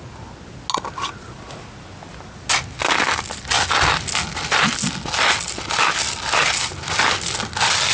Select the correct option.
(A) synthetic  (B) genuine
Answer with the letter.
B